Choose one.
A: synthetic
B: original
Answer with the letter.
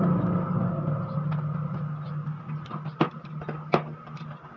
B